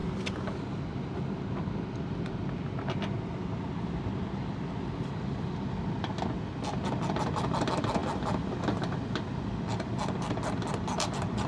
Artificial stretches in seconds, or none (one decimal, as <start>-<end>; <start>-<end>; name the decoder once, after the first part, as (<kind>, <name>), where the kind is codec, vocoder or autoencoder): none